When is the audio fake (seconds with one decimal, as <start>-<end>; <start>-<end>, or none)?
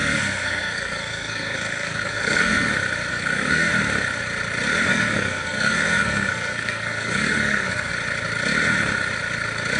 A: 0.0-2.7; 3.1-3.7; 4.9-7.9